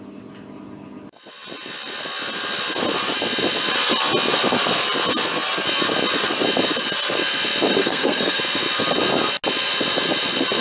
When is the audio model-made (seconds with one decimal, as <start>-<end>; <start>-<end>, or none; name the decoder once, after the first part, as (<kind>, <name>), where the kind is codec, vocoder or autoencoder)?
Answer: 7.8-8.4 (codec, SNAC)